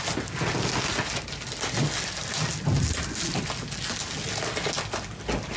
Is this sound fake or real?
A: real